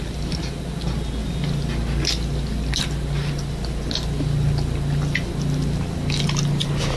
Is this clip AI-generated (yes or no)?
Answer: no